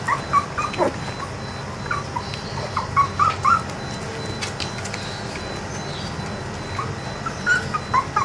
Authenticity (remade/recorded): recorded